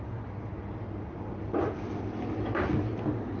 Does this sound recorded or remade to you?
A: recorded